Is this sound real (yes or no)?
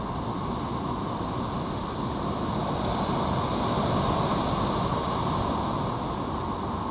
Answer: yes